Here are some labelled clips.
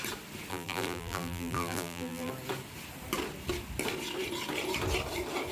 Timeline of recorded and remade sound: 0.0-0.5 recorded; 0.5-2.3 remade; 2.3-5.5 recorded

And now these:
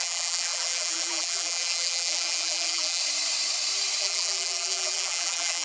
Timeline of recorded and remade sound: 0.0-3.0 remade; 3.0-4.0 recorded; 4.0-5.6 remade

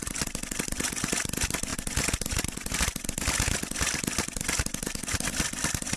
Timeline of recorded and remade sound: 0.0-6.0 recorded

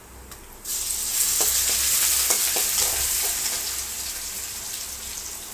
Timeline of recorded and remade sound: 0.0-5.5 recorded

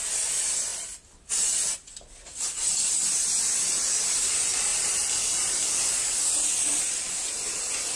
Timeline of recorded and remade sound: 0.0-4.7 recorded; 4.7-6.9 remade; 6.9-8.0 recorded

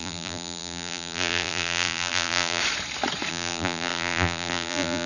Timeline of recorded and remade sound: 0.0-2.6 remade; 2.6-3.3 recorded; 3.3-5.1 remade

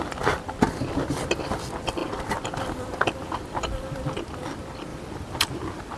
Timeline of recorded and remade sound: 0.0-4.9 recorded; 4.9-6.0 remade